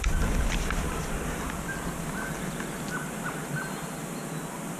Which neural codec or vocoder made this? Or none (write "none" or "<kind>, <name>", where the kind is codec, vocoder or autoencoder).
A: none